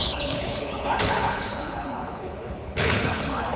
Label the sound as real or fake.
fake